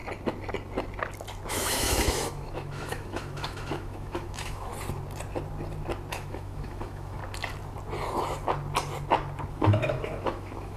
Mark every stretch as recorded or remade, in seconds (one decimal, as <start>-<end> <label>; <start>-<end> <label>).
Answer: 0.0-1.5 recorded; 1.5-4.7 remade; 4.7-6.1 recorded; 6.1-7.2 remade; 7.2-9.5 recorded; 9.5-10.8 remade